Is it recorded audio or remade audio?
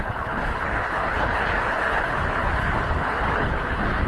remade